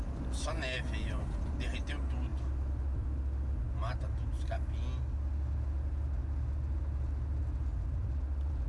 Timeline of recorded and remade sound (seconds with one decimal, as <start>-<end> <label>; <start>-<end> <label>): 0.0-8.7 recorded